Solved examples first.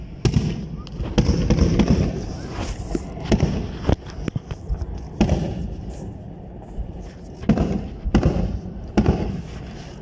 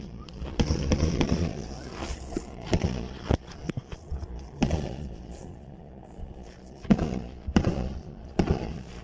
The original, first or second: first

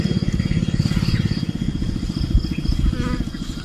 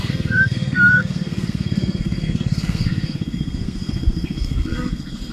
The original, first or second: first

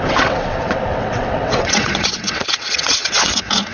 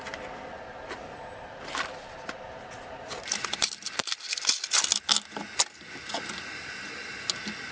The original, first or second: second